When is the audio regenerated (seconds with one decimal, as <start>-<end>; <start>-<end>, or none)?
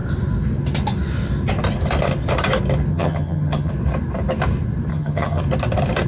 2.9-3.7; 4.9-5.4